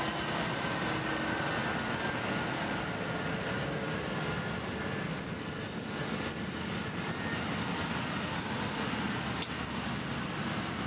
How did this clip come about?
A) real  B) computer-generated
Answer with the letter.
A